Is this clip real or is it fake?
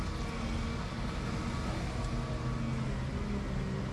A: real